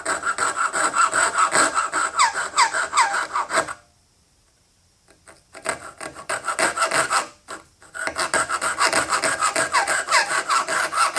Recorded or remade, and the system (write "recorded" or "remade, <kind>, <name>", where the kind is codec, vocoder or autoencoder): recorded